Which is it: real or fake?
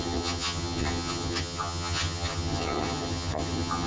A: fake